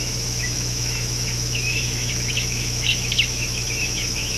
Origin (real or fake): fake